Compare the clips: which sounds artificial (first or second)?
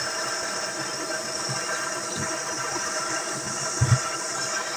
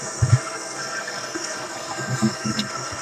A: second